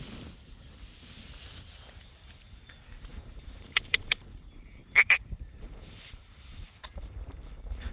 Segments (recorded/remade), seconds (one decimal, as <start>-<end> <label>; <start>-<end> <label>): 0.0-2.0 recorded; 2.0-2.7 remade; 2.7-3.1 recorded; 3.1-7.9 remade